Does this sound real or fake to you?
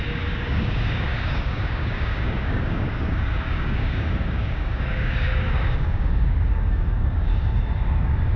fake